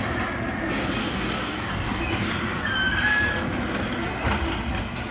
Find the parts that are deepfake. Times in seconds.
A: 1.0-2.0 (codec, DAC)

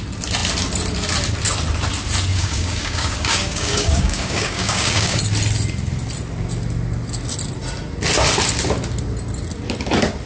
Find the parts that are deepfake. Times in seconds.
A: 2.3-5.2 (codec, DAC)

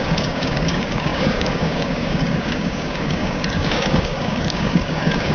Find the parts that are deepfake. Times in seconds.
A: 0.0-5.3 (codec, DAC)

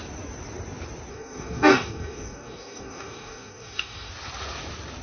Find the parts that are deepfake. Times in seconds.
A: 1.1-4.1 (codec, DAC)

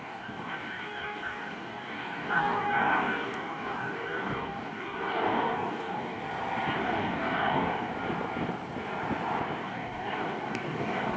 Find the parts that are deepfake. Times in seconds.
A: 0.0-6.2 (codec, DAC); 6.8-7.9; 9.6-11.2

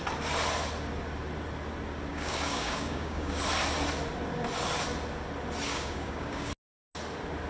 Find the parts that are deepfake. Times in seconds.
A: 2.1-3.4 (codec, DAC); 5.7-6.5

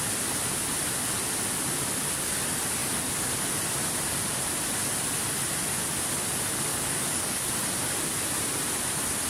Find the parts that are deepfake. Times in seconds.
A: 6.7-7.5 (codec, DAC)